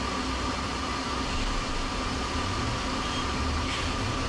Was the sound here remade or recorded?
recorded